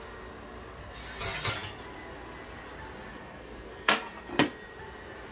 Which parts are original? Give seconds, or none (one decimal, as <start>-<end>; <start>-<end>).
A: 0.0-3.1; 3.9-5.3